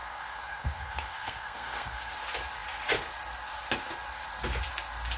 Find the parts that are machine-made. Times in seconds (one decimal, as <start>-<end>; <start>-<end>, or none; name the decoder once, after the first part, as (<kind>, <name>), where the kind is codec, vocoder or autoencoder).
0.0-2.1 (codec, SNAC)